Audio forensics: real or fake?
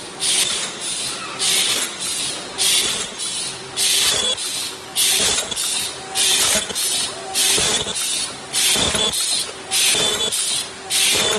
real